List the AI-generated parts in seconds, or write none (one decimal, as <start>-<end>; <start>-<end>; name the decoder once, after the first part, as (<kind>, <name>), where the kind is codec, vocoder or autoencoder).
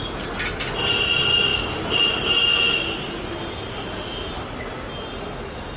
none